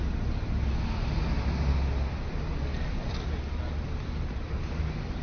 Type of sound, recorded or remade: recorded